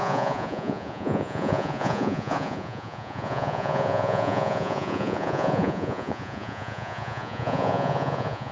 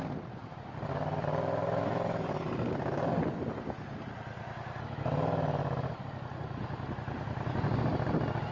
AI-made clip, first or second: first